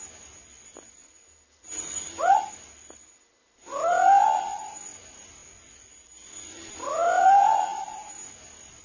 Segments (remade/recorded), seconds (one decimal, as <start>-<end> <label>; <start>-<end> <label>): 0.0-8.8 recorded